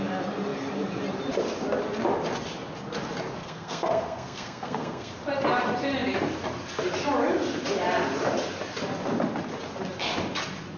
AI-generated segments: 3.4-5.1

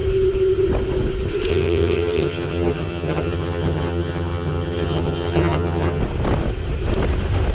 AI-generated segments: 1.5-6.0

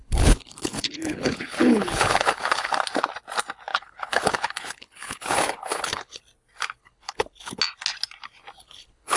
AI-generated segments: 0.0-2.7; 3.7-6.2; 6.8-7.6; 8.6-9.2